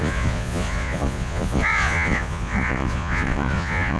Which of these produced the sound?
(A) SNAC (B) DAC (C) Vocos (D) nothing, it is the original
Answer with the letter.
C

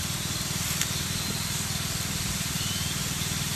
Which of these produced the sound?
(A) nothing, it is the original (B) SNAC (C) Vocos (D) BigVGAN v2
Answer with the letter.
A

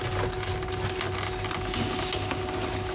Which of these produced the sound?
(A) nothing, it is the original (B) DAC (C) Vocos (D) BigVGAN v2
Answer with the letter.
A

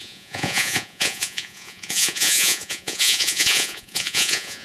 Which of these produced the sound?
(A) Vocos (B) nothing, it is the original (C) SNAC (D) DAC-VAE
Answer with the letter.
A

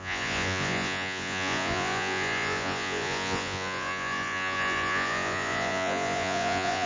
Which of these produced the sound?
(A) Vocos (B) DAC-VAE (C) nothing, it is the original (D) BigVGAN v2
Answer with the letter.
A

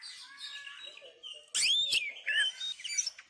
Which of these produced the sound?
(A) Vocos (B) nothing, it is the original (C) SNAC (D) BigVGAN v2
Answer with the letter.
B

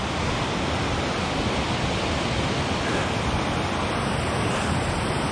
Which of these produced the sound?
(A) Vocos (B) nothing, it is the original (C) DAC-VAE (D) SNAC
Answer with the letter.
B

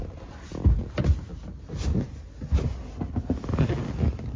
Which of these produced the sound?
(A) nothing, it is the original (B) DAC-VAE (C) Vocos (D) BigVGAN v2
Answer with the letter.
A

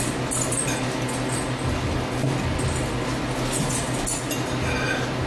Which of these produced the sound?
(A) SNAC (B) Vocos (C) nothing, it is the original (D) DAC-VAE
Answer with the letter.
C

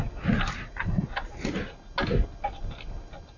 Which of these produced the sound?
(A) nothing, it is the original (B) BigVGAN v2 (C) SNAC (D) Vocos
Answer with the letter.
A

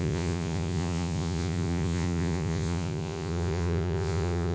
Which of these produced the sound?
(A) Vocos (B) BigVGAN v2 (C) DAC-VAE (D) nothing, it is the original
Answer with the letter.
A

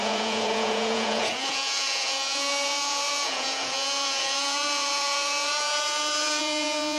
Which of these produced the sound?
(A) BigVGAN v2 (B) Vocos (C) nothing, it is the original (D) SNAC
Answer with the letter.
B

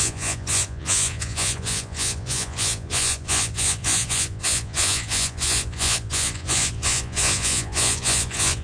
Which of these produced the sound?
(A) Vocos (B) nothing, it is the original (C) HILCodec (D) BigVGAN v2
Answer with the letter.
A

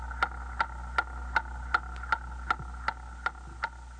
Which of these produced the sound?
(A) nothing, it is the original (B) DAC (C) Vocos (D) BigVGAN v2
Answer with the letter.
A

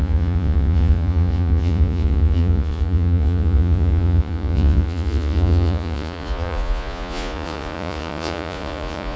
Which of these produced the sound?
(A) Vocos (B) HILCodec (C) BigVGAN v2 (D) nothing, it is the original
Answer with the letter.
A